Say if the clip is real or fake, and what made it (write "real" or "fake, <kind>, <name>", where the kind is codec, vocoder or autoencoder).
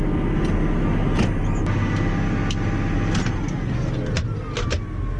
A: real